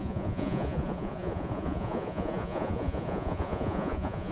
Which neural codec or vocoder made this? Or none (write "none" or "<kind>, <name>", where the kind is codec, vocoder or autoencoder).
vocoder, Vocos